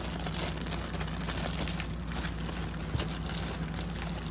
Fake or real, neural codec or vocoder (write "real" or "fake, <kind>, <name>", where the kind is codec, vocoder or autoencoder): real